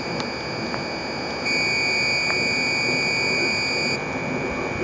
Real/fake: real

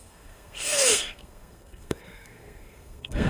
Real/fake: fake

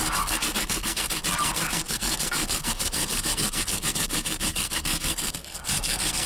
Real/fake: fake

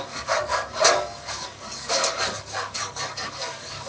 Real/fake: fake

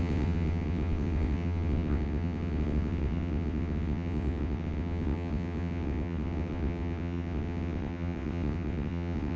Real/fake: fake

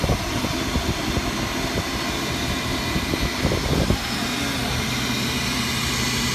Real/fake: real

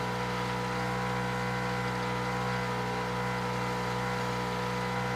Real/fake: real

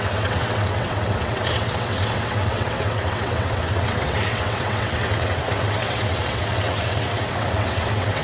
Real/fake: fake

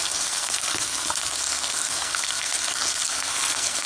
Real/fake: fake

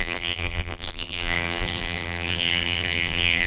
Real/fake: fake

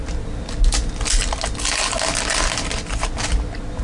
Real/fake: real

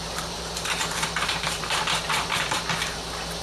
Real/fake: fake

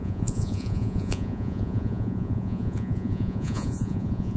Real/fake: fake